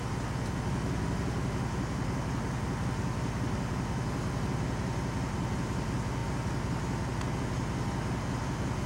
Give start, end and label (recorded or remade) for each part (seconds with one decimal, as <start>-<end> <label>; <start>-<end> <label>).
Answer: 0.0-8.9 recorded